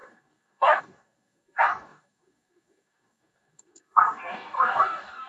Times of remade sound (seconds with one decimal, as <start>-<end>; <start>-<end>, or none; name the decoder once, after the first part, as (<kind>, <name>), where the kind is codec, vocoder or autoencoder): 0.0-5.3 (codec, DAC)

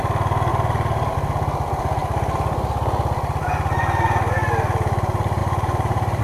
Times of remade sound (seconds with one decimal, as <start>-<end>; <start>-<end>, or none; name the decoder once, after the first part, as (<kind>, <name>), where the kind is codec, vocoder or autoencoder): 0.5-1.1 (vocoder, BigVGAN v2); 5.4-6.2

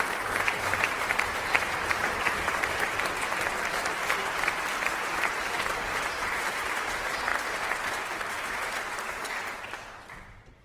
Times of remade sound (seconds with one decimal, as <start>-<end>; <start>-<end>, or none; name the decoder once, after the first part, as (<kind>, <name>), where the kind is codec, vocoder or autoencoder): 0.0-3.3 (vocoder, BigVGAN v2); 5.6-7.3; 8.3-10.6

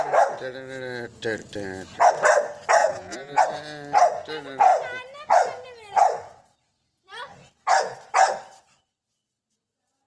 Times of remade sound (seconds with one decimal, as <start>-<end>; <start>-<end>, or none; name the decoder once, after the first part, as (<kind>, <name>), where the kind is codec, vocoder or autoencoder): 2.8-3.4 (vocoder, Vocos)

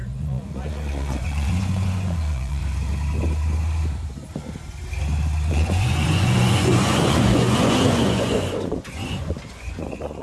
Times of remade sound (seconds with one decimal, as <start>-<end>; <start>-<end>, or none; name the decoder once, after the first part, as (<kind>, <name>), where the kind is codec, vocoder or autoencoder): 0.0-2.6 (vocoder, Vocos); 5.5-10.2

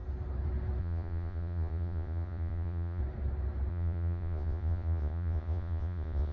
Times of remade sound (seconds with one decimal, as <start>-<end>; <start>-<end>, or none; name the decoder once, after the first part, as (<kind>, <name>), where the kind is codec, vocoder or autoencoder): 0.8-3.0 (vocoder, Vocos); 3.7-6.3

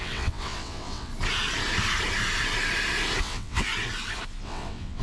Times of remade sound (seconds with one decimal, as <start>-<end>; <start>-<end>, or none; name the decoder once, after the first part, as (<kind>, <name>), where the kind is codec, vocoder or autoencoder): 0.0-1.1 (vocoder, WaveNeXt); 3.2-3.7; 4.4-5.0